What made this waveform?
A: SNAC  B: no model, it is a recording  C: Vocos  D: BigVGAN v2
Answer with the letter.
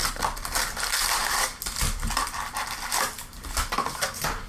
B